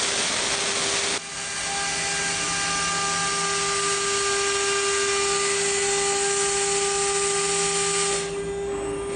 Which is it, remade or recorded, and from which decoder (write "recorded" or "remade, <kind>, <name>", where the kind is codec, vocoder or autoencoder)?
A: recorded